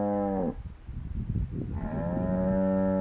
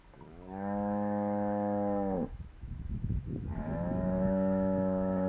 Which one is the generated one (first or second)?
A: second